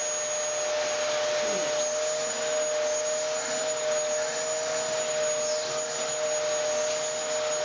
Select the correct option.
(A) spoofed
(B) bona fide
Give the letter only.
B